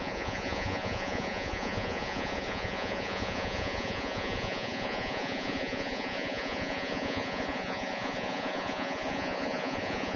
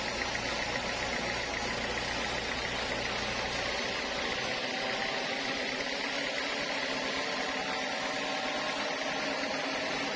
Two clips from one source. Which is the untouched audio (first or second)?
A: second